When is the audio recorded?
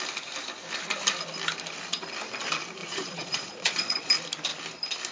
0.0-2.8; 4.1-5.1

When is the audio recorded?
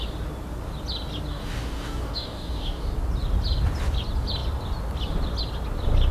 0.0-1.3; 2.9-6.1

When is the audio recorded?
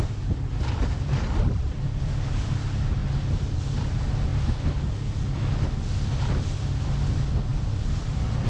0.0-0.5; 2.1-3.0; 3.6-7.5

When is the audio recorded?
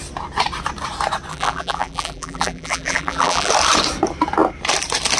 0.0-1.3; 3.5-5.2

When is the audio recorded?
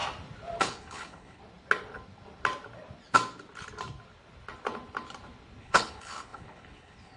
0.0-0.6; 1.4-5.6